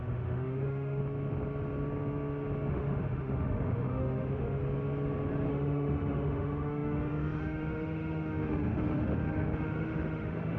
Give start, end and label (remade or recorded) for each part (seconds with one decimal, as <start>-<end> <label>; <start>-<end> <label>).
0.0-1.0 remade; 1.0-2.7 recorded; 2.7-4.6 remade; 4.6-5.5 recorded; 5.5-10.6 remade